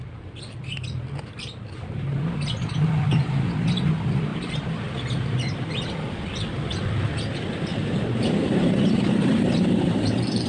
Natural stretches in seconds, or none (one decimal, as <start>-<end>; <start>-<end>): 0.0-4.3; 5.7-7.7